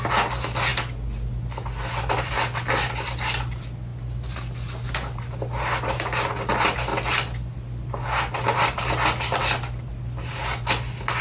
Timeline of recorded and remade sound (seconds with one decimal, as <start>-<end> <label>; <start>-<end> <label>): 0.0-11.2 recorded